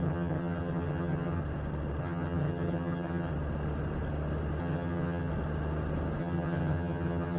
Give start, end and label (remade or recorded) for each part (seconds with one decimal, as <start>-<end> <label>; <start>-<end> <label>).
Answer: 0.0-1.4 remade; 1.4-2.0 recorded; 2.0-3.3 remade; 3.3-4.6 recorded; 4.6-5.3 remade; 5.3-6.2 recorded; 6.2-7.4 remade